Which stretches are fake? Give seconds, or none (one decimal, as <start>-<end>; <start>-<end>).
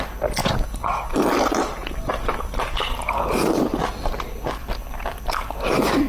1.8-3.1; 4.6-5.5